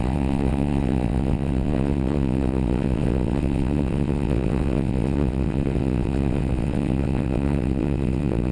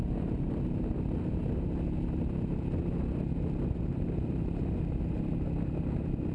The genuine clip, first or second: second